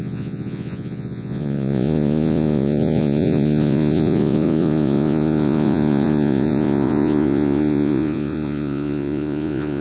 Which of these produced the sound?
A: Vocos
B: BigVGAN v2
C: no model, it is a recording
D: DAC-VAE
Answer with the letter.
A